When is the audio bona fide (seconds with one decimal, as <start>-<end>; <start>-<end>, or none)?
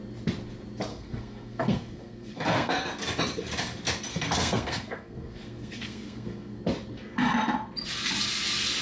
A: 0.0-0.9; 2.9-4.1; 6.6-8.8